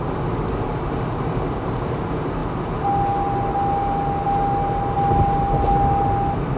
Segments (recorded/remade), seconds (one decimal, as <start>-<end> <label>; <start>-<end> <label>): 0.0-6.6 recorded